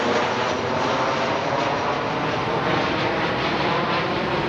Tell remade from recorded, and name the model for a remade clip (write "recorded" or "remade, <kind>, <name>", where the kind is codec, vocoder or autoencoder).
recorded